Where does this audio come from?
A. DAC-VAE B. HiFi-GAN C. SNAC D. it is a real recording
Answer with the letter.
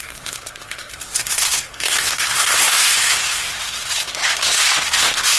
C